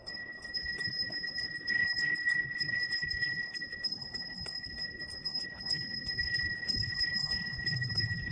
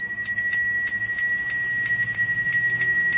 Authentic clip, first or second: second